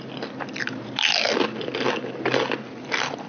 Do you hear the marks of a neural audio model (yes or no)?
no